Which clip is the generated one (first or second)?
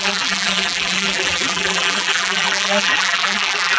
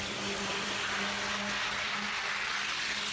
first